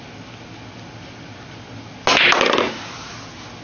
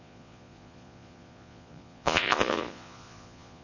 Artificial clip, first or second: second